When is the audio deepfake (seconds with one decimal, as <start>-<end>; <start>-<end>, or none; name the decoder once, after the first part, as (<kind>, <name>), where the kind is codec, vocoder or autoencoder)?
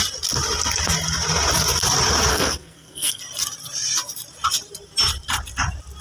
2.3-3.2 (codec, SNAC)